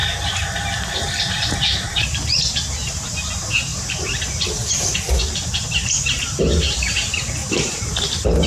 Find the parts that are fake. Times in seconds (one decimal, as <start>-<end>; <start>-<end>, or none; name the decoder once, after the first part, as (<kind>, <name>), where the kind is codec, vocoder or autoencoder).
0.0-2.4 (vocoder, BigVGAN v2); 3.7-6.2; 7.4-8.0